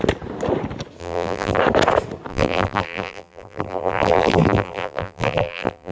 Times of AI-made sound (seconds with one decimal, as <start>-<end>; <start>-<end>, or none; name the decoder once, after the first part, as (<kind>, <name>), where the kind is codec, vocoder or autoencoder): 1.0-1.6 (vocoder, BigVGAN v2); 2.3-5.9